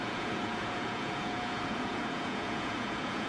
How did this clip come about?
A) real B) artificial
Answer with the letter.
B